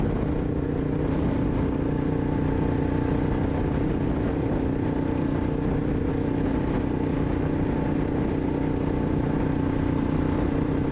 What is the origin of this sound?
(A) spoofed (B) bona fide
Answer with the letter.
B